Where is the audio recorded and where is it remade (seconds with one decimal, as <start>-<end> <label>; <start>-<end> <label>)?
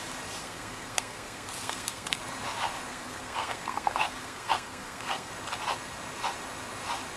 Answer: 0.0-0.4 recorded; 0.4-2.2 remade; 2.2-2.9 recorded; 2.9-5.3 remade; 5.3-7.2 recorded